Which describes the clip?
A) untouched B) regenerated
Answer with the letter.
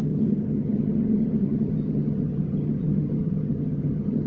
B